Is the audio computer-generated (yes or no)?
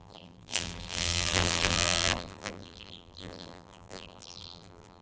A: yes